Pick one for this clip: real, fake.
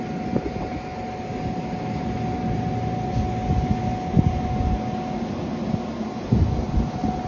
real